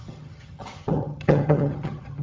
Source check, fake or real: fake